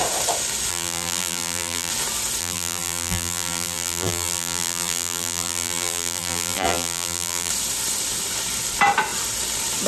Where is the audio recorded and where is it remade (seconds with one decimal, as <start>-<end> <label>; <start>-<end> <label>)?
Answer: 0.0-0.7 recorded; 0.7-1.9 remade; 1.9-2.4 recorded; 2.4-7.5 remade; 7.5-9.9 recorded